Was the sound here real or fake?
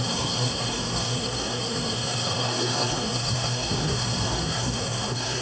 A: fake